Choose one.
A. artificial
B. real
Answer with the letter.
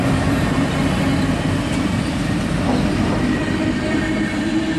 A